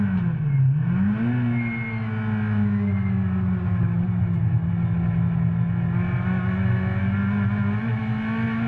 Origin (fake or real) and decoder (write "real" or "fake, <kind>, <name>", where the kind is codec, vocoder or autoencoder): real